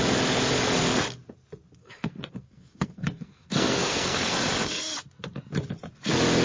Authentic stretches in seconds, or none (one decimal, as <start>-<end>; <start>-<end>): 0.0-1.8; 4.4-6.4